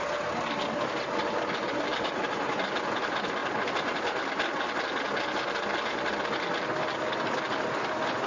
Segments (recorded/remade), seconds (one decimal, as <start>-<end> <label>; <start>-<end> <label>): 0.0-8.3 recorded